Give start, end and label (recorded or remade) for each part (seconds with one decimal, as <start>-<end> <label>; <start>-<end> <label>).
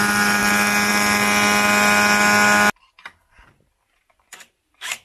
0.0-5.0 recorded